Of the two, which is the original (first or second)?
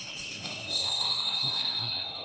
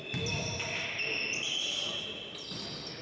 second